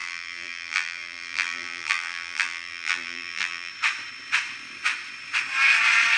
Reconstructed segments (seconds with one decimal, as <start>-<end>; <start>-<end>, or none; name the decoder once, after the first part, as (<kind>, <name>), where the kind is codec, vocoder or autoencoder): 0.0-3.7 (vocoder, BigVGAN v2)